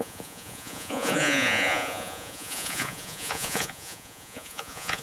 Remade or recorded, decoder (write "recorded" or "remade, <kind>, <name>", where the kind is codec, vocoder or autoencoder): remade, vocoder, Vocos